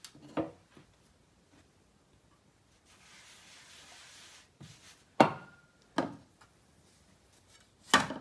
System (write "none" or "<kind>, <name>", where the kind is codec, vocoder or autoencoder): none